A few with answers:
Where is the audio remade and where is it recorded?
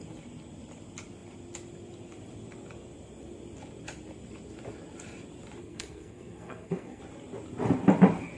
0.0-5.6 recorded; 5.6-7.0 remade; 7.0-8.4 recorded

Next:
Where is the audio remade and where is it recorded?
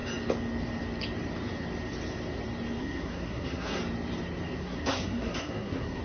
0.0-2.8 recorded; 2.8-3.8 remade; 3.8-4.6 recorded; 4.6-6.0 remade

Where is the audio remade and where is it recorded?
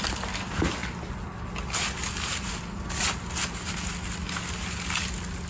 0.0-5.5 recorded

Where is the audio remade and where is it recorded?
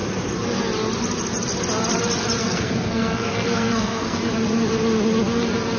0.0-2.4 recorded; 2.4-4.3 remade; 4.3-5.8 recorded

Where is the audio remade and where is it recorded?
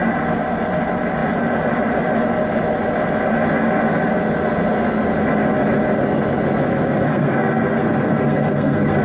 0.0-7.1 recorded; 7.1-9.0 remade